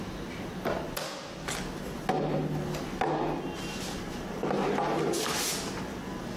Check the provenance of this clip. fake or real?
real